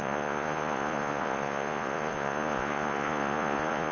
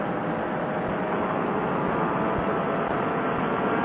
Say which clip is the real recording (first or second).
second